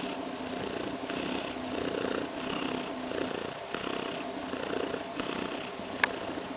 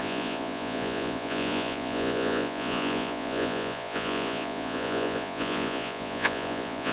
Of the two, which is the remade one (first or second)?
second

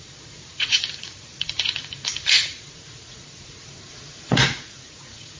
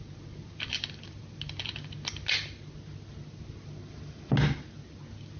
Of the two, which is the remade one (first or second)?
first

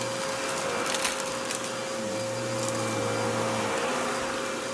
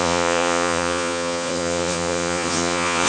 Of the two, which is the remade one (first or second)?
second